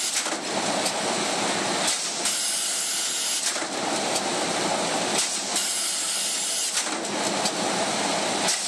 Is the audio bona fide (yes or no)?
yes